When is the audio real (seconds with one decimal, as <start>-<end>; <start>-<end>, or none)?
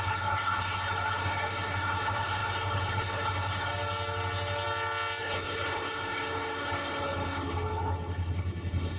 3.7-5.2